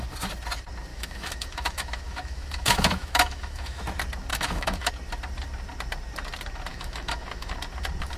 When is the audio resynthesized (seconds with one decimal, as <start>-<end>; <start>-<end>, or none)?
0.9-3.8; 4.3-4.9; 6.7-7.5